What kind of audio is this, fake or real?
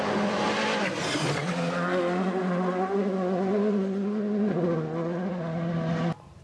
real